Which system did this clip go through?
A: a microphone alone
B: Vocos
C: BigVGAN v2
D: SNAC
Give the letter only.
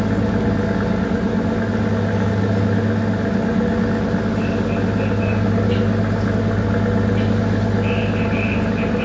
A